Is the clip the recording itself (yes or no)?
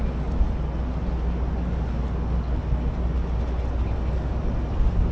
yes